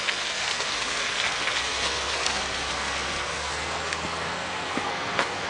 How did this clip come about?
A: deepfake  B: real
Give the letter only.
A